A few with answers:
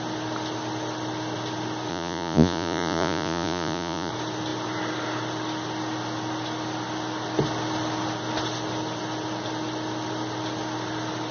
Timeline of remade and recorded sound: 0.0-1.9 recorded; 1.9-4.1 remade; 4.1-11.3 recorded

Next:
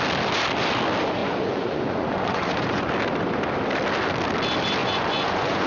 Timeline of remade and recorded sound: 0.0-1.2 recorded; 1.2-2.9 remade; 2.9-4.8 recorded; 4.8-5.7 remade